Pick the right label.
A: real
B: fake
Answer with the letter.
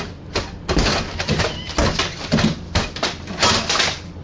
A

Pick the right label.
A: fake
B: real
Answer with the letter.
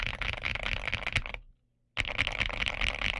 B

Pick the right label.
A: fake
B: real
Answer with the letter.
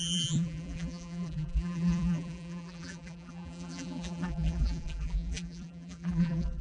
A